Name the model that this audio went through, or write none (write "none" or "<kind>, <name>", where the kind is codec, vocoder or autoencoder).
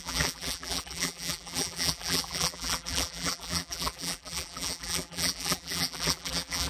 vocoder, BigVGAN v2